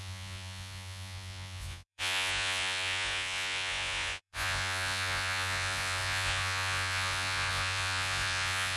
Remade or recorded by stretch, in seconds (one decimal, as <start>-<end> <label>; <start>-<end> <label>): 0.0-8.8 remade